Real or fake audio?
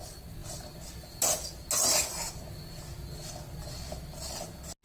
real